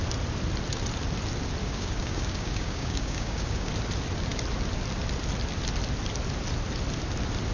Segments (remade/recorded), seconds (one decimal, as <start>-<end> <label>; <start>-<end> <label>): 0.0-1.6 recorded; 1.6-3.7 remade; 3.7-7.5 recorded